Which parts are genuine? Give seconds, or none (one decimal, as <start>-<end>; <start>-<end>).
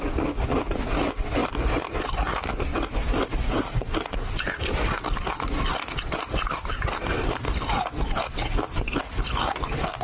0.0-2.7; 4.6-10.0